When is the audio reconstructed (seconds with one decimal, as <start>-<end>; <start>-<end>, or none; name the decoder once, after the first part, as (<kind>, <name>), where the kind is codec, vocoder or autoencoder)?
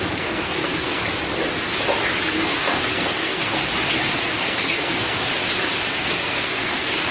0.0-1.0 (codec, SNAC); 2.3-3.6; 4.4-5.3; 6.0-7.1